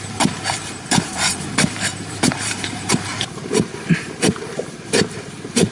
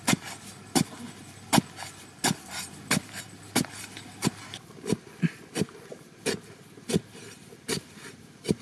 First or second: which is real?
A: second